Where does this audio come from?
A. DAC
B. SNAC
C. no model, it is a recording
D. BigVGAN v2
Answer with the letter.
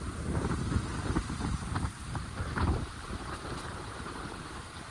D